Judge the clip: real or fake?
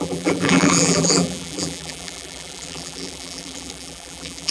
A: fake